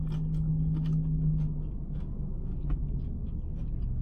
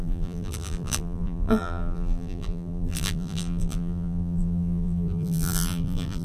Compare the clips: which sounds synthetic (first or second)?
second